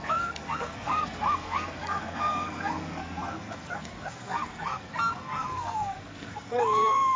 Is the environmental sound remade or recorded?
remade